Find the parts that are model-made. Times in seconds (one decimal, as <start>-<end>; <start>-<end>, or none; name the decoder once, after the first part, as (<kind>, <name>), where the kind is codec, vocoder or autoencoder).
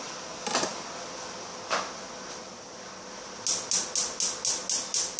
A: none